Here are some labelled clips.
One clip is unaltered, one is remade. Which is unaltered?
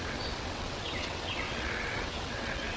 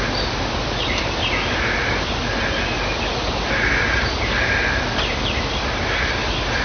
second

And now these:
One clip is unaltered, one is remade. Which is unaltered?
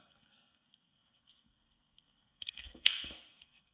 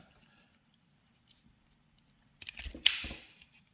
second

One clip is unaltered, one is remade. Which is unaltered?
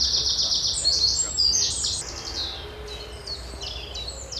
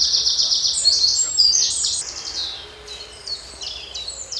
first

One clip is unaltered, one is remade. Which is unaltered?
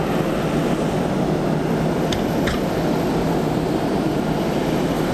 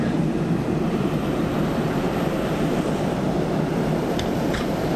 first